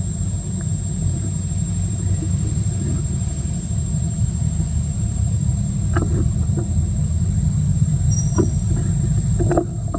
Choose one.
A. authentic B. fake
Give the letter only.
A